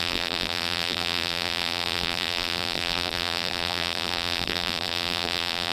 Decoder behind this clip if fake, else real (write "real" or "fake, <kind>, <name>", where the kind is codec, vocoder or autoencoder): fake, vocoder, BigVGAN v2